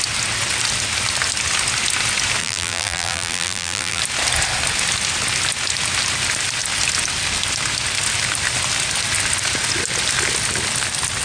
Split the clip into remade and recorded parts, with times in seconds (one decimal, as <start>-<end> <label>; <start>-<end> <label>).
0.0-2.4 recorded; 2.4-4.0 remade; 4.0-11.2 recorded